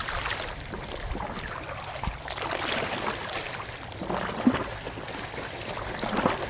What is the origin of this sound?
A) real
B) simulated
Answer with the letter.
A